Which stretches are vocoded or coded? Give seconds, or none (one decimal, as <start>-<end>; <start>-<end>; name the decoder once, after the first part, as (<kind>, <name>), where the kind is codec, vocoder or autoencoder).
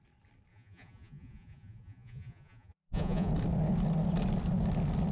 0.5-3.3 (vocoder, Vocos)